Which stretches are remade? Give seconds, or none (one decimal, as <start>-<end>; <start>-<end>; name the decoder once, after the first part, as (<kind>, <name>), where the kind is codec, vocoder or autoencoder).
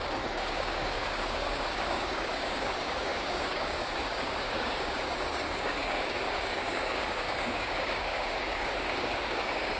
0.0-9.8 (codec, DAC)